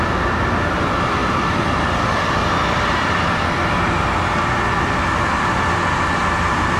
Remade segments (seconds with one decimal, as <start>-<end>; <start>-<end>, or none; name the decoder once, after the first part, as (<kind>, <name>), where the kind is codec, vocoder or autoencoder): none